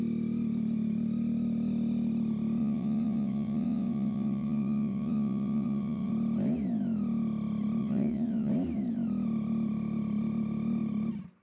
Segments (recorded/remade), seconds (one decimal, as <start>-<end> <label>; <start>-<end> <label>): 0.0-2.6 recorded; 2.6-6.1 remade; 6.1-7.8 recorded; 7.8-8.5 remade; 8.5-11.4 recorded